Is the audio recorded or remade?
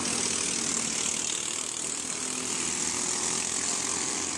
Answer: recorded